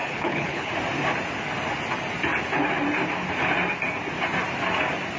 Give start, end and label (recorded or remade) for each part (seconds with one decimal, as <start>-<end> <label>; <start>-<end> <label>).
0.0-0.7 remade; 0.7-5.2 recorded